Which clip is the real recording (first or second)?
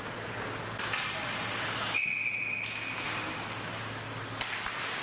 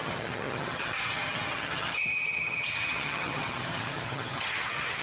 first